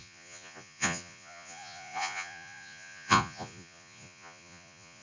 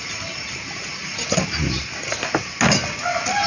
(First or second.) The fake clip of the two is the first